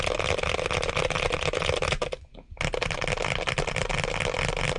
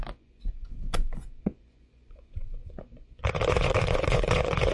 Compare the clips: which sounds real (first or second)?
first